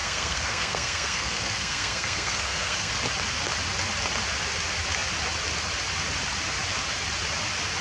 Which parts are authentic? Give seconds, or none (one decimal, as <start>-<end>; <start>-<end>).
2.9-7.8